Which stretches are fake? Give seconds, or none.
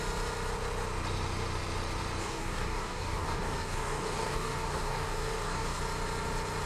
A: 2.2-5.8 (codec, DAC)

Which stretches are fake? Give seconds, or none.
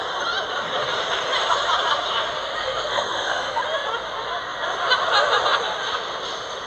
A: 2.6-3.6 (codec, SNAC)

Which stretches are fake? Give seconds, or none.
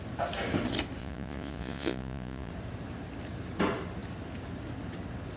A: 1.0-2.5 (vocoder, Vocos)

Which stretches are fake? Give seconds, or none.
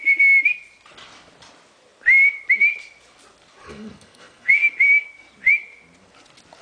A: 3.6-4.5 (codec, SNAC)